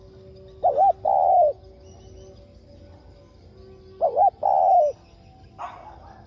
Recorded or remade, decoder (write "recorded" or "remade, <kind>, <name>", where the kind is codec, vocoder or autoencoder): recorded